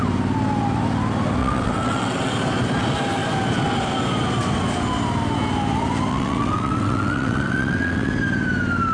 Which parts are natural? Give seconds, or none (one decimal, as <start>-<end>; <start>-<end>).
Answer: 0.0-1.4; 2.3-6.1; 8.1-8.9